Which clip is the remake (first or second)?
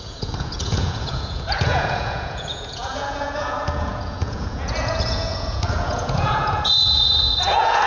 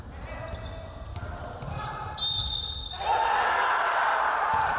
first